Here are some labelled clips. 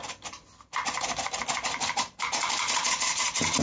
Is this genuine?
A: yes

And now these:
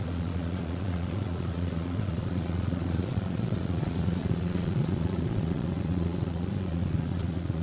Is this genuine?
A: no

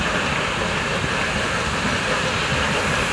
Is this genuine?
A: yes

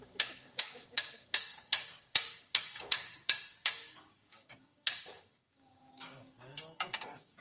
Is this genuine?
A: no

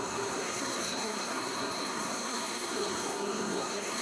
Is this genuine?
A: no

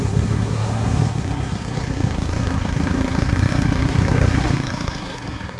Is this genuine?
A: no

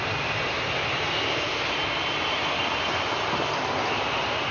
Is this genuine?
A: yes